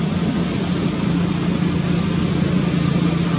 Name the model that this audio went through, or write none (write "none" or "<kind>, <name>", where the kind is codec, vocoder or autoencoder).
none